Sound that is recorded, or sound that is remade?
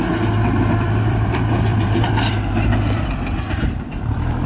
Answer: remade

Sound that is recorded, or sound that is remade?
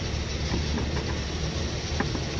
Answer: recorded